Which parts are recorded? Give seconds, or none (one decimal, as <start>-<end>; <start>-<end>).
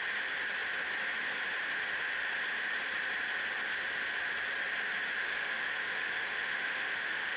0.0-5.2